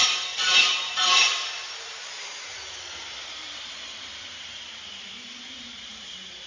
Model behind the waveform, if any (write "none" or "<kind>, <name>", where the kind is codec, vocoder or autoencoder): vocoder, BigVGAN v2